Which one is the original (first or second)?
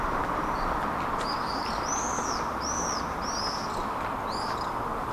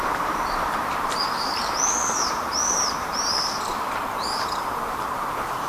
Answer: first